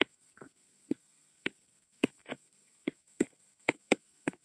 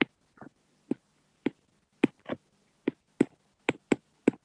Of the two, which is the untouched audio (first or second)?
second